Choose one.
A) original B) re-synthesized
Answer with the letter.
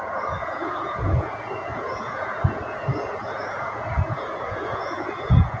B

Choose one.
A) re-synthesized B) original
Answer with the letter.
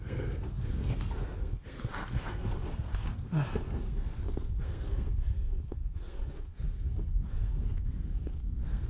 A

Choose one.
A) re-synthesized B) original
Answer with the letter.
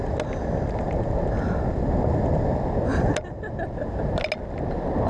B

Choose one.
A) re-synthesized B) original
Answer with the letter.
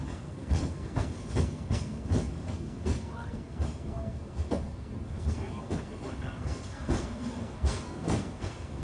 A